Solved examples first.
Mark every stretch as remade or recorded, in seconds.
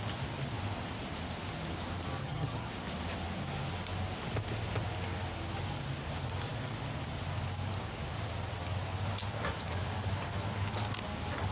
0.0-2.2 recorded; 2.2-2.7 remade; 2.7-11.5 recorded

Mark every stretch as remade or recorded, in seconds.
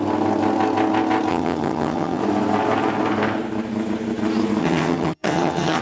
0.0-1.3 recorded; 1.3-2.2 remade; 2.2-4.6 recorded; 4.6-5.8 remade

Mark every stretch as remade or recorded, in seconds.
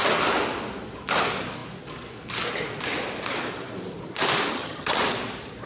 0.0-4.5 recorded; 4.5-5.0 remade; 5.0-5.7 recorded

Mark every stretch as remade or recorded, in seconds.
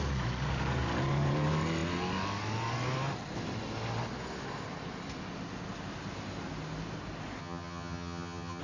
0.0-7.4 recorded; 7.4-8.6 remade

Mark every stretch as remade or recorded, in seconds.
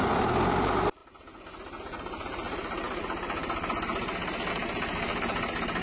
0.0-5.8 recorded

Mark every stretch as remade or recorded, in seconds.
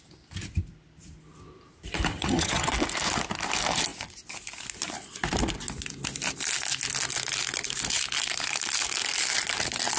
0.0-2.1 recorded; 2.1-2.7 remade; 2.7-10.0 recorded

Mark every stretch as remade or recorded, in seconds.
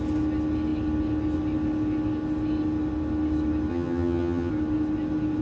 0.0-3.7 recorded; 3.7-4.5 remade; 4.5-5.4 recorded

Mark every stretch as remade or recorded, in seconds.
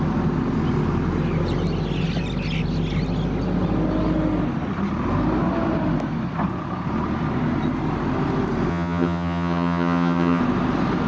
0.0-8.7 recorded; 8.7-10.4 remade; 10.4-11.1 recorded